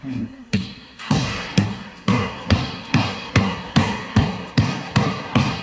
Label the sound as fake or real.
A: fake